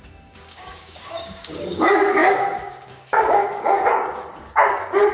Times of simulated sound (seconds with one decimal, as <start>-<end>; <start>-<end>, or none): 0.0-5.1